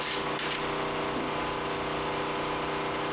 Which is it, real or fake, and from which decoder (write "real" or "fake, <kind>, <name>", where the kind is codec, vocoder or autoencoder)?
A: real